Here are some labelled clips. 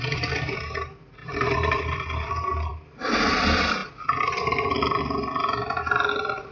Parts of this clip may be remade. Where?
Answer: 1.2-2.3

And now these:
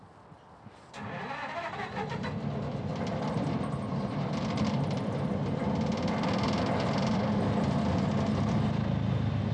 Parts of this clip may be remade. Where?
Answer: 2.9-5.1

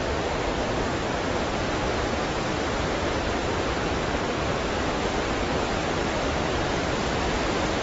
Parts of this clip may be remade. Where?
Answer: 3.4-7.8

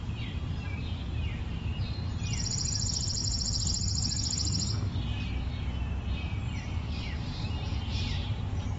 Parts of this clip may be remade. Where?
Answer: 0.0-1.7; 2.4-3.2; 6.4-8.8

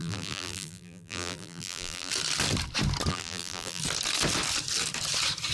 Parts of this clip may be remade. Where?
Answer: 0.0-2.1; 3.1-3.8